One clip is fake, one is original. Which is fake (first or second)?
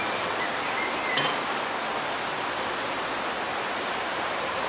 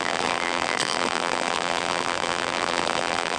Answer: second